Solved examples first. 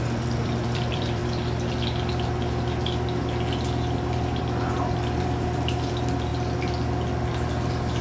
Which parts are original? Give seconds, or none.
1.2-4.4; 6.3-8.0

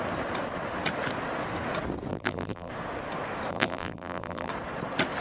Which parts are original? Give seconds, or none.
0.0-2.1; 2.7-3.5; 4.5-5.2

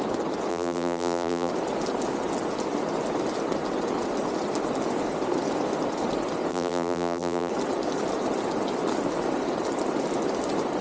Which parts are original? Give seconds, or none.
0.0-0.5; 1.5-6.5; 7.5-10.8

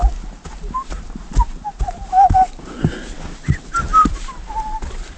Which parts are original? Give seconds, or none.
0.0-3.9; 4.5-5.2

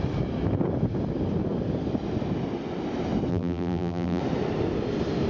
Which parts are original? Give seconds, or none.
0.0-3.3; 4.2-5.3

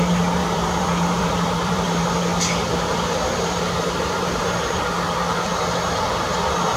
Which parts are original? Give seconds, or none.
0.0-0.4; 2.1-2.7; 4.9-6.8